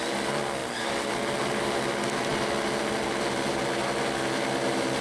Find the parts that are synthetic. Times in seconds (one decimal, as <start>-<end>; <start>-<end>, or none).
none